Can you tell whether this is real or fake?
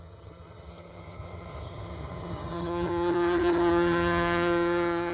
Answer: fake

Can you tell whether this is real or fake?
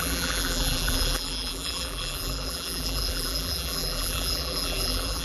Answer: fake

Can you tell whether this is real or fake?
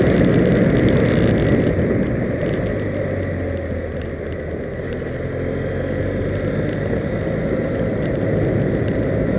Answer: real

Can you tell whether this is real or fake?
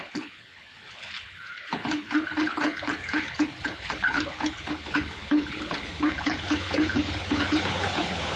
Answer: fake